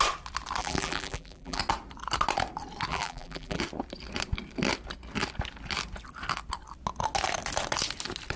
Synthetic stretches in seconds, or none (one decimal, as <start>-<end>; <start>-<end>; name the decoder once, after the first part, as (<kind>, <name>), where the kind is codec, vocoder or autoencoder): 0.6-1.6 (vocoder, BigVGAN v2); 2.9-3.6